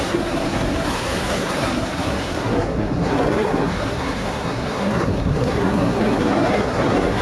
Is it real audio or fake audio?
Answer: fake